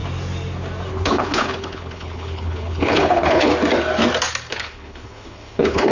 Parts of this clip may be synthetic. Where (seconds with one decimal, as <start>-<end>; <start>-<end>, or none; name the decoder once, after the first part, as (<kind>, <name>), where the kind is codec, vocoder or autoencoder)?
0.9-3.5 (codec, HILCodec); 4.5-5.9